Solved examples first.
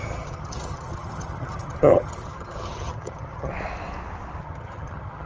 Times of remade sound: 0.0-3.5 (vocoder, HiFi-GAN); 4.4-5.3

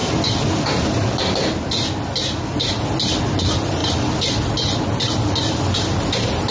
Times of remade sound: none